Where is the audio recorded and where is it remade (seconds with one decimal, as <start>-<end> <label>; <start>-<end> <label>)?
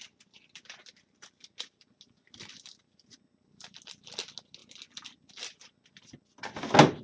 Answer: 0.0-7.0 recorded